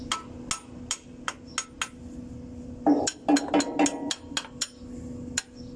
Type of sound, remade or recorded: recorded